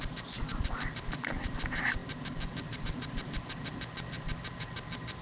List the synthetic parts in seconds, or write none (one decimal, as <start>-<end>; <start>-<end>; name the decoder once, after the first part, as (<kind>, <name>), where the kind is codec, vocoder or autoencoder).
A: 0.0-5.2 (vocoder, BigVGAN v2)